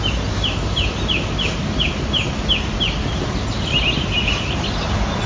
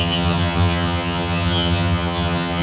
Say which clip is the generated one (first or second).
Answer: second